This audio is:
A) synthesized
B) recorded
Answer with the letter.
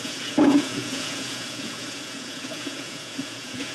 A